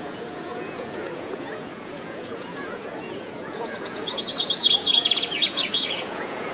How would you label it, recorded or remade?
remade